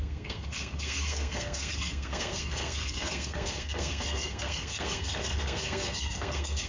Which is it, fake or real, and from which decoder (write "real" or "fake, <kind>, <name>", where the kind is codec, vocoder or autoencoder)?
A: fake, codec, SNAC